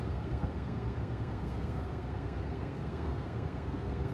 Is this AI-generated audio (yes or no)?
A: yes